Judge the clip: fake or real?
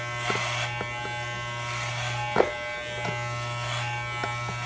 real